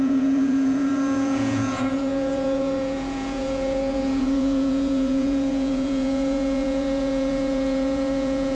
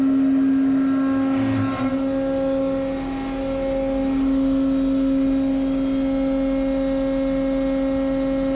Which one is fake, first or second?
first